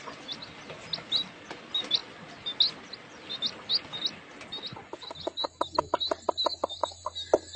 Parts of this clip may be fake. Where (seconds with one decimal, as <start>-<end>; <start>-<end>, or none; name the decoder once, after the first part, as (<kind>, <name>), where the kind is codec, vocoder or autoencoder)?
none